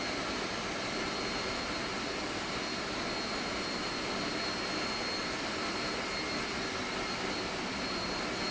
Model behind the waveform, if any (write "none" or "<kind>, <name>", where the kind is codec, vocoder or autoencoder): none